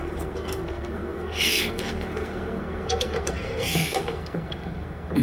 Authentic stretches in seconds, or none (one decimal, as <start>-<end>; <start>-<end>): none